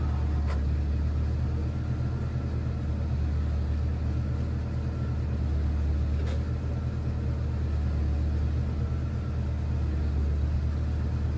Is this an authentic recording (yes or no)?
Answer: yes